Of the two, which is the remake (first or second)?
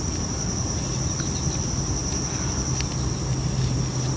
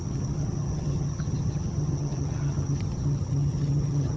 second